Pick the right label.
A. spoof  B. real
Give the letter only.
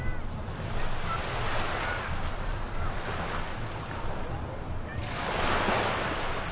B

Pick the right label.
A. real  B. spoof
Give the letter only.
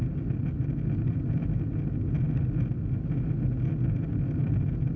A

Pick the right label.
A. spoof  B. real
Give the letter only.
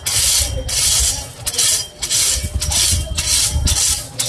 B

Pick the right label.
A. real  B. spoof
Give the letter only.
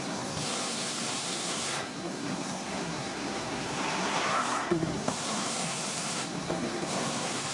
B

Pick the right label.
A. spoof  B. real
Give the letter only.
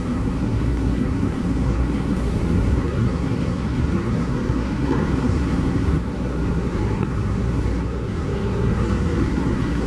A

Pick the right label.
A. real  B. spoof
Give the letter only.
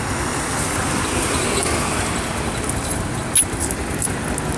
A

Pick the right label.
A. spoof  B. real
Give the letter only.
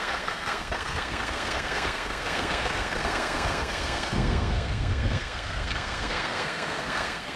A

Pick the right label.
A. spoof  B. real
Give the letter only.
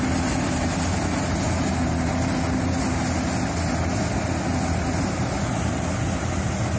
B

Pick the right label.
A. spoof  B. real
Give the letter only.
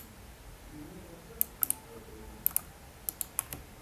B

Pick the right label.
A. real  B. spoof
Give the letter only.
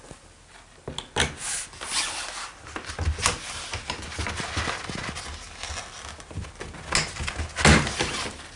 A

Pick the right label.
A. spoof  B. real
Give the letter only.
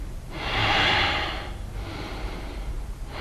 B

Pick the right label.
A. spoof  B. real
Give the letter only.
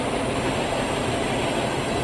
B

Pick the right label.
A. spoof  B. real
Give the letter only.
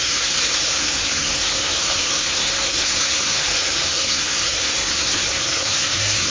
A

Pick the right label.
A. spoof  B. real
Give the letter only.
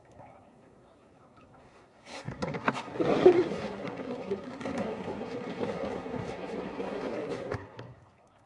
A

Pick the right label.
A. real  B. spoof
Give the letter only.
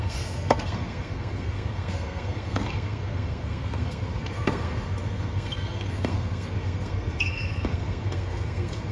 B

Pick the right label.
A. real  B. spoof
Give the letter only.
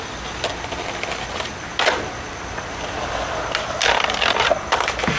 A